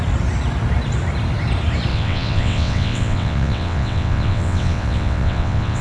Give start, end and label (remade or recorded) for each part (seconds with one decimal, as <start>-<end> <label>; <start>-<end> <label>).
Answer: 0.0-1.9 recorded; 1.9-5.8 remade